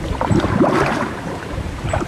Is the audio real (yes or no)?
no